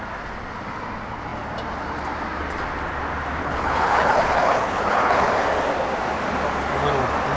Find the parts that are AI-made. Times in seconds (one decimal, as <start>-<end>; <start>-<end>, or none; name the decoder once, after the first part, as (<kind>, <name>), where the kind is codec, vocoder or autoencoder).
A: 3.4-5.3 (codec, HILCodec)